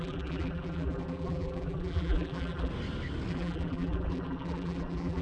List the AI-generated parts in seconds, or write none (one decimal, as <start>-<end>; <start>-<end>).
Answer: 0.0-2.7; 3.3-5.2

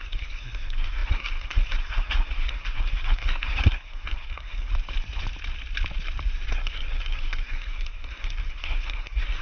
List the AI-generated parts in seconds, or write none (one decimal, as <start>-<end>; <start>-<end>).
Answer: 0.0-4.7; 6.5-9.4

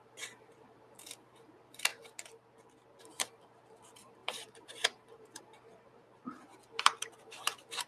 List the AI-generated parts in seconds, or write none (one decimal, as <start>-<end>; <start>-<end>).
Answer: 0.0-1.9; 3.0-6.5; 7.0-7.9

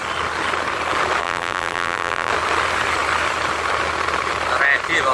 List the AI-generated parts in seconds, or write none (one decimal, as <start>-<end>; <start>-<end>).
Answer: 1.2-2.3

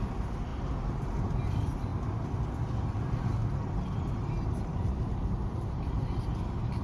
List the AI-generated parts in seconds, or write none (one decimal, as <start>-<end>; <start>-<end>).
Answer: 0.0-0.5; 1.2-3.4; 5.8-6.8

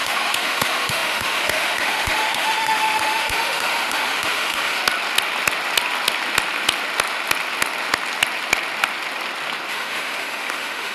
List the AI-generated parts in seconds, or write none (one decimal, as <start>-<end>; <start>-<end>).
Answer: 0.0-4.8; 9.7-10.9

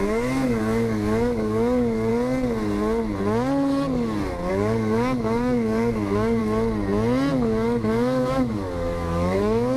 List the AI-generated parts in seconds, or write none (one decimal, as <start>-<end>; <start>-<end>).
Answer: 0.0-2.1; 4.5-6.4; 7.3-9.8

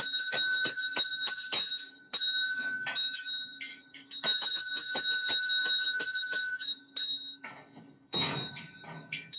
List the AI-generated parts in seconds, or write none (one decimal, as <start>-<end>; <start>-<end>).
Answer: 0.0-9.4